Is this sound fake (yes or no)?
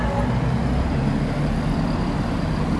no